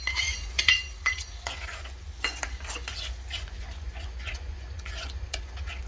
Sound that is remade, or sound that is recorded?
remade